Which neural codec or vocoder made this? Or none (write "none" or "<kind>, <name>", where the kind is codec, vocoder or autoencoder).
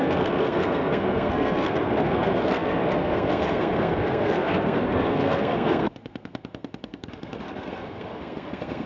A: codec, SNAC